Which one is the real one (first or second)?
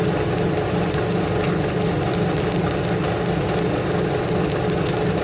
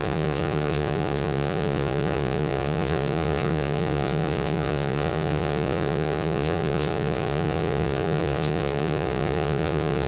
first